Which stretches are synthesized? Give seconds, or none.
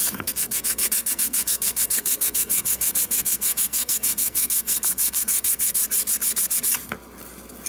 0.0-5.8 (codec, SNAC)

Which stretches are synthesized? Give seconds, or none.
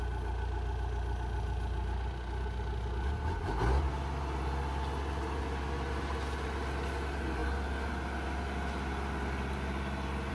none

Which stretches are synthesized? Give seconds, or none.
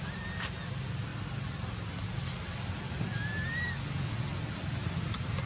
none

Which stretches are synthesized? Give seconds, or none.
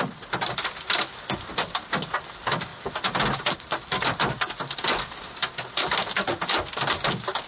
none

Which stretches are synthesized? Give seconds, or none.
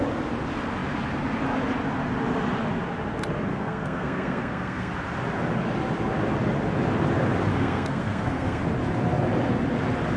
3.5-4.9 (codec, SNAC); 7.5-8.6